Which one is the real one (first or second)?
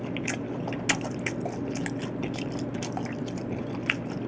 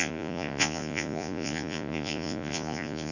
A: first